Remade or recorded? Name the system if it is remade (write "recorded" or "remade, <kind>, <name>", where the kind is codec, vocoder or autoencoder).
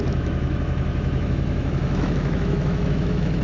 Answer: remade, autoencoder, DAC-VAE